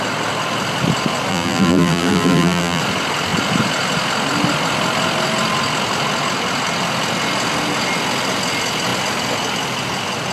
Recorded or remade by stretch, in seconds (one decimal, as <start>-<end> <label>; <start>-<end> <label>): 0.0-1.3 recorded; 1.3-2.8 remade; 2.8-10.3 recorded